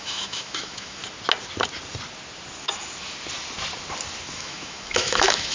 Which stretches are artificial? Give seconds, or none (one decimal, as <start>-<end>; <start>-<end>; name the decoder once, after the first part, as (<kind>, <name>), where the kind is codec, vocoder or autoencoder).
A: 0.0-1.0 (autoencoder, DAC-VAE); 4.3-5.5